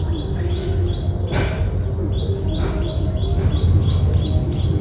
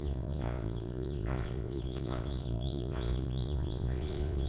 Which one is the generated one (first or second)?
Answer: second